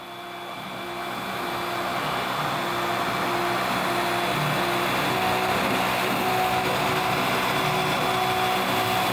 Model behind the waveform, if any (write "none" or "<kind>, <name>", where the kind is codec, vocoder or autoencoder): none